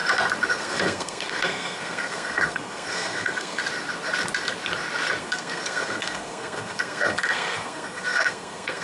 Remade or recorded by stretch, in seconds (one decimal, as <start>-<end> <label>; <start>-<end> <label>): 0.0-0.5 recorded; 0.5-3.6 remade; 3.6-5.2 recorded; 5.2-8.8 remade